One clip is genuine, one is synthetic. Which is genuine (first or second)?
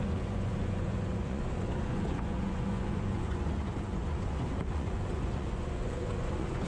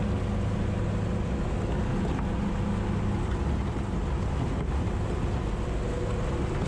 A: second